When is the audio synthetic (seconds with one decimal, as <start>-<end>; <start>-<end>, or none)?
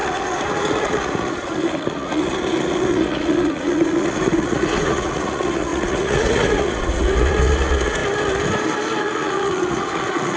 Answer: 0.0-8.0; 9.0-10.4